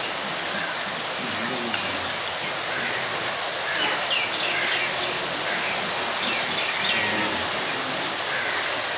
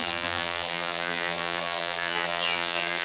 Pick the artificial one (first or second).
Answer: second